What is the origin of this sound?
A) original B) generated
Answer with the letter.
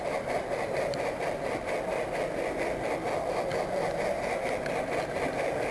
A